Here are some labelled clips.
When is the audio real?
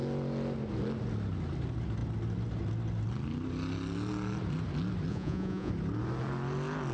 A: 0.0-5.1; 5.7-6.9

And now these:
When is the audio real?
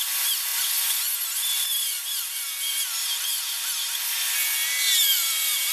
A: 0.0-5.7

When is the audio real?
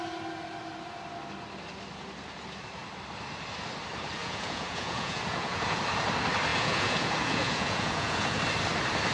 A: 0.0-4.2; 5.8-6.5; 8.4-9.1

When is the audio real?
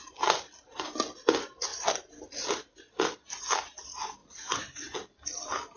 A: 0.0-4.2; 4.8-5.8